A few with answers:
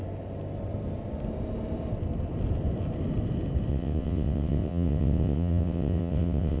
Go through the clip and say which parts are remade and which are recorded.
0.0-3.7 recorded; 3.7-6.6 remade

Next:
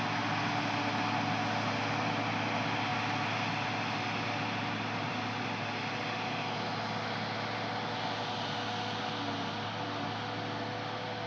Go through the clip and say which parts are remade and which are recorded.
0.0-11.3 recorded

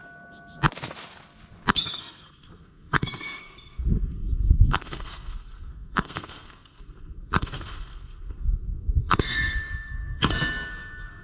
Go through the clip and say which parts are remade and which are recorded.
0.0-1.7 recorded; 1.7-11.2 remade

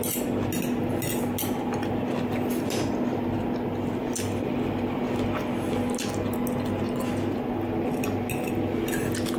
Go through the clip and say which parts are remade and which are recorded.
0.0-9.4 recorded